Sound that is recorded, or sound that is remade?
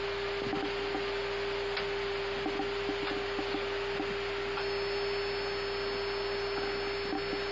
recorded